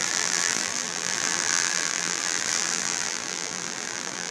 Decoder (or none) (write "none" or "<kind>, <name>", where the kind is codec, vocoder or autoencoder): vocoder, BigVGAN v2